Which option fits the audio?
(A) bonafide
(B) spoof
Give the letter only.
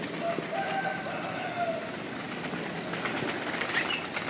A